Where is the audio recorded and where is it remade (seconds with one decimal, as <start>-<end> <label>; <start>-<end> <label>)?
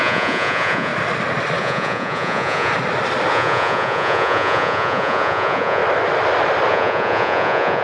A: 0.0-0.9 remade; 0.9-1.6 recorded; 1.6-2.7 remade; 2.7-3.3 recorded; 3.3-5.8 remade; 5.8-6.7 recorded; 6.7-7.8 remade